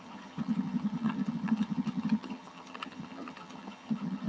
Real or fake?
fake